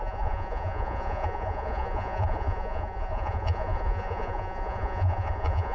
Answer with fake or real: fake